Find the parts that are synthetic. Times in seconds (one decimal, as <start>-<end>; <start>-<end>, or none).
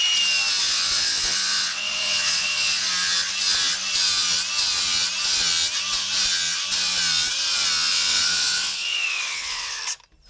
0.6-2.8; 7.9-9.8